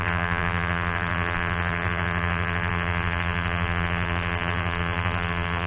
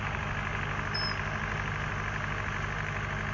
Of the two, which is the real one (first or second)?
second